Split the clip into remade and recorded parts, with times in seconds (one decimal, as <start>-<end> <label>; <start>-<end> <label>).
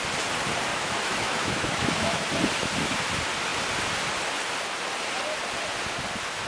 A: 0.0-0.7 recorded; 0.7-2.3 remade; 2.3-6.5 recorded